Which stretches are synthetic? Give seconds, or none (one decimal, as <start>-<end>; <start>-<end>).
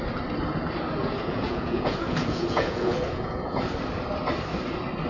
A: 1.0-3.6